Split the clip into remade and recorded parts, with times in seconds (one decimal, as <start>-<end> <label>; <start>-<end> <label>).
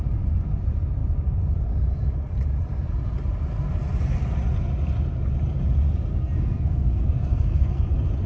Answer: 0.0-6.1 recorded; 6.1-7.9 remade; 7.9-8.3 recorded